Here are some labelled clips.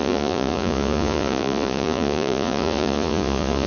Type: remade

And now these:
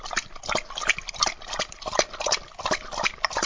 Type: recorded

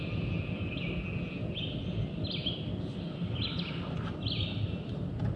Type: recorded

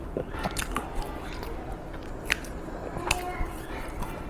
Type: remade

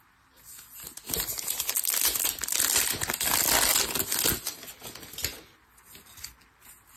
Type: recorded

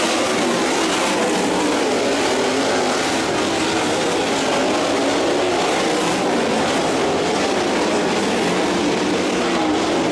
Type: recorded